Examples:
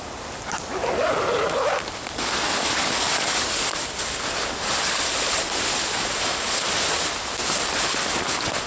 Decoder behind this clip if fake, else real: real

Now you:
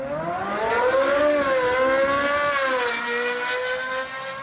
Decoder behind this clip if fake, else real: real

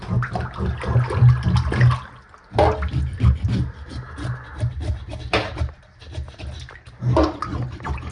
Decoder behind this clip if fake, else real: real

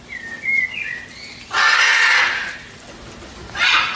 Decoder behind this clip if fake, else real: real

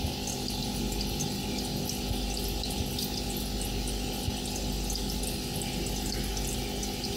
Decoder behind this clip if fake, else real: real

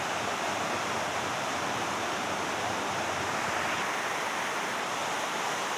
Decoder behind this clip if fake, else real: real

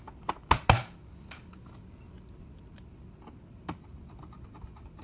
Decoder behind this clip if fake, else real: real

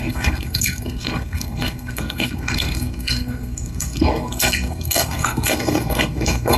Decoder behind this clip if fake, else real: fake, codec, SNAC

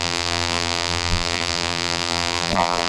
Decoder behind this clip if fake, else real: fake, vocoder, BigVGAN v2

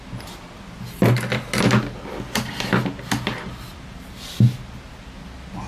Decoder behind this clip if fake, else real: real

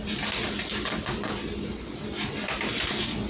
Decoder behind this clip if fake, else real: real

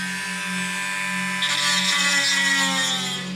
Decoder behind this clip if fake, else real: real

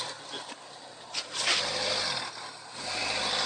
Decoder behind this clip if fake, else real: real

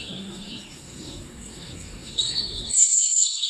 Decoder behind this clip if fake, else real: fake, codec, SNAC